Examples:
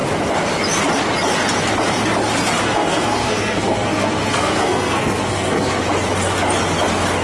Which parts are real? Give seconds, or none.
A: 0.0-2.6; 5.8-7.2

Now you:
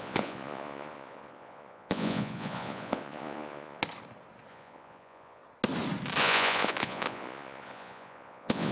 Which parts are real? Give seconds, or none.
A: 3.8-4.5; 5.4-6.2

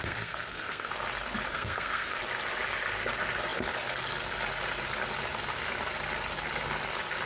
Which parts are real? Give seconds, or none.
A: 0.9-1.5; 2.2-7.3